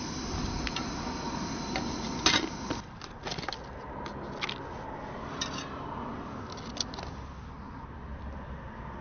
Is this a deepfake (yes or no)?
no